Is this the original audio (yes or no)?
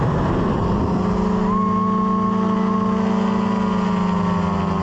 yes